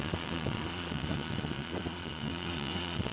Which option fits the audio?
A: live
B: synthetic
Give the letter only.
B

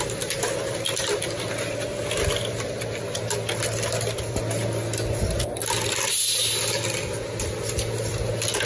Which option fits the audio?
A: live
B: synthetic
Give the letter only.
A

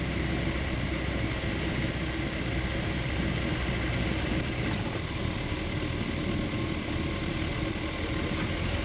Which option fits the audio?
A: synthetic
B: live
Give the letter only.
B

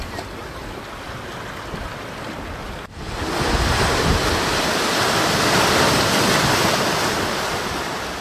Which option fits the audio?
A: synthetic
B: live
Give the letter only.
B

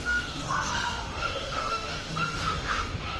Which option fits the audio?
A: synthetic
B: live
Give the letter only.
A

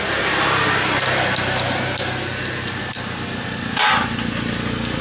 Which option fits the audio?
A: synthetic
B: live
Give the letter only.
B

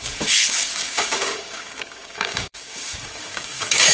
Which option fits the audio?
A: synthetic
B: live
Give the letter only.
A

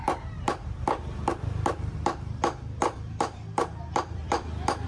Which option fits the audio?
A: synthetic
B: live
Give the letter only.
A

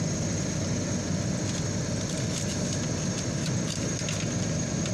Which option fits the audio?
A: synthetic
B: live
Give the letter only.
B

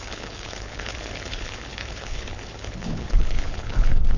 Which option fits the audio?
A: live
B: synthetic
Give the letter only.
B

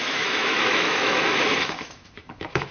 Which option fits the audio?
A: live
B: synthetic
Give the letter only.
B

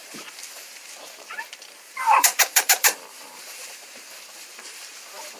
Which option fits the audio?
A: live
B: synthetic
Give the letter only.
B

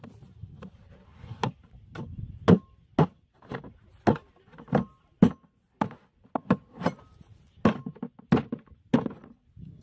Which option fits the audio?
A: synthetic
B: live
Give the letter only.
B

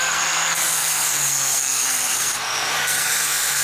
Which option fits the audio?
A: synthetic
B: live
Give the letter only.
A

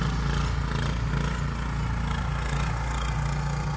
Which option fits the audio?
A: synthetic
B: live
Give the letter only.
B